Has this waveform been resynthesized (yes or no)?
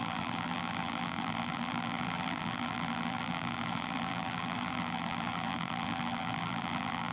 yes